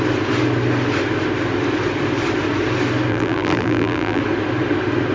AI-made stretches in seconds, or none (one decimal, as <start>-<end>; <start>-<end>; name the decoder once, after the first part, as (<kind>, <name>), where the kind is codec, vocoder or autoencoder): 3.1-4.2 (vocoder, BigVGAN v2)